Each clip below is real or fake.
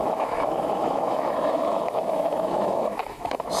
fake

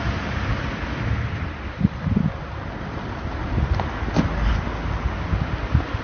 real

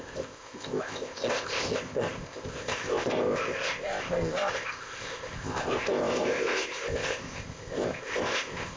fake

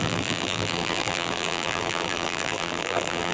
fake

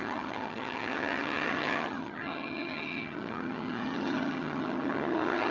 fake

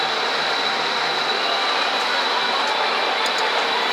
real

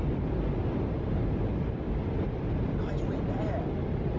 real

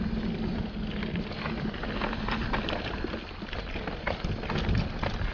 real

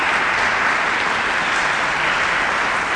real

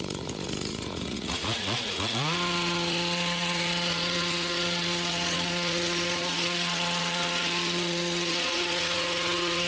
fake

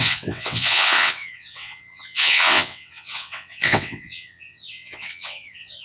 fake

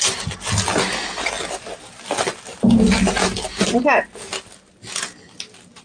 real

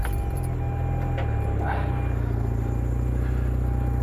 real